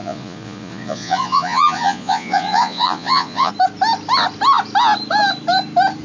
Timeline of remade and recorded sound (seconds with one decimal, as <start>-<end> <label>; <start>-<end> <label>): 0.0-3.5 remade; 3.5-6.0 recorded